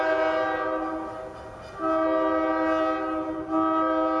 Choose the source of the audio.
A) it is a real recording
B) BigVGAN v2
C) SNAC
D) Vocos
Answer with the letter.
A